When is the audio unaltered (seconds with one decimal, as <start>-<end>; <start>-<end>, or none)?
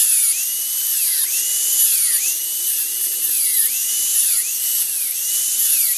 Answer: 0.0-1.5; 2.0-3.5